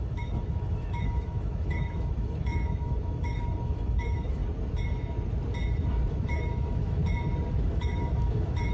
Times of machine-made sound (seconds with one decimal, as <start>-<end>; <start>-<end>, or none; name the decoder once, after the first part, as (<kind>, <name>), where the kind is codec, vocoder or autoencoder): 0.0-4.4 (autoencoder, DAC-VAE); 6.1-7.0; 7.6-8.7